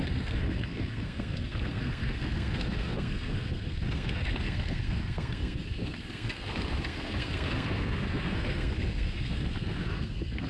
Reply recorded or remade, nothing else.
remade